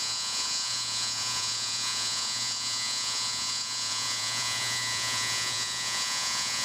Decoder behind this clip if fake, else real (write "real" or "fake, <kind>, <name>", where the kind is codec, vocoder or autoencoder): fake, vocoder, Vocos